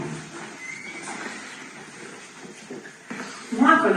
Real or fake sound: real